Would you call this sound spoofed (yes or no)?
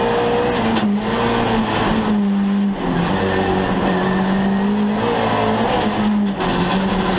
no